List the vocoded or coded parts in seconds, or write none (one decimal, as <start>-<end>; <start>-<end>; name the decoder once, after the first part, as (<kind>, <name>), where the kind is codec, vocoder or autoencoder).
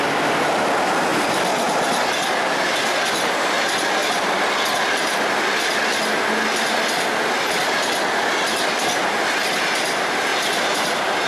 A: 1.1-1.8 (vocoder, BigVGAN v2); 10.3-11.3